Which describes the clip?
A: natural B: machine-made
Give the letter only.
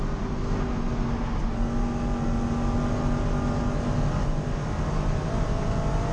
A